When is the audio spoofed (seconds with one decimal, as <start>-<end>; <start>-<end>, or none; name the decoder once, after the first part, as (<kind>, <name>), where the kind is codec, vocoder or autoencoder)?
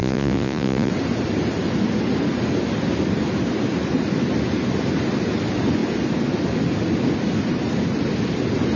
0.0-0.9 (vocoder, Vocos)